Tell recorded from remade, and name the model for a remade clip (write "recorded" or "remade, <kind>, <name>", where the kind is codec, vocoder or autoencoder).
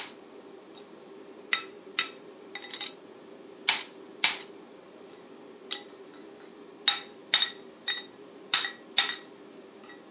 recorded